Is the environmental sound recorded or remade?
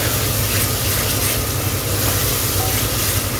recorded